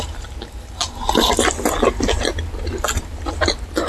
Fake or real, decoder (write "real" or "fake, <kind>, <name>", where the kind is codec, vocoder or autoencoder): real